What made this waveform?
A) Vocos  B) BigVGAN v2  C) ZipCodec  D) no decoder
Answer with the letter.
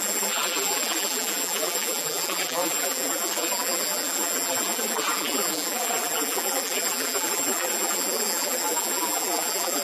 B